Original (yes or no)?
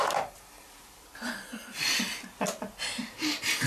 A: no